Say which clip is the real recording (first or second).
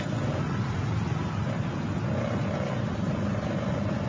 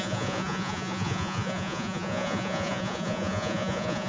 first